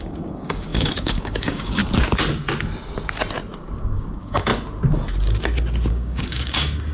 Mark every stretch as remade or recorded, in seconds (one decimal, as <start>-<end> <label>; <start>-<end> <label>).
0.0-1.8 remade; 1.8-3.8 recorded; 3.8-4.5 remade; 4.5-5.9 recorded; 5.9-6.9 remade